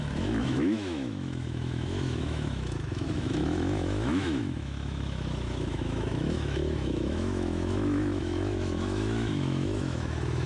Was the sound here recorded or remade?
remade